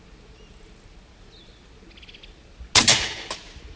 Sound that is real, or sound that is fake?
real